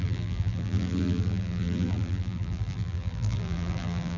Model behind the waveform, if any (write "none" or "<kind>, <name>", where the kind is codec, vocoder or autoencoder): vocoder, BigVGAN v2